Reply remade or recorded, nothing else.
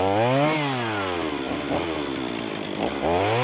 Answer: recorded